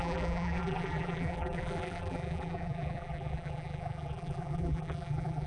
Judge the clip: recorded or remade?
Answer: remade